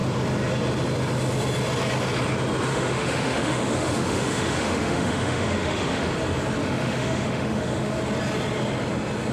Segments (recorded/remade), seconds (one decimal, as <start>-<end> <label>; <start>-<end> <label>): 0.0-2.7 recorded; 2.7-6.1 remade; 6.1-6.6 recorded; 6.6-8.0 remade; 8.0-9.3 recorded